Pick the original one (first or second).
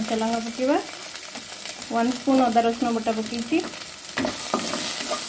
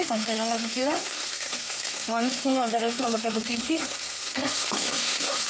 first